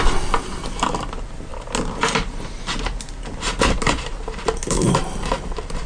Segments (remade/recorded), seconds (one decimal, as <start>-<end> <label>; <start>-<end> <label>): 0.0-5.9 recorded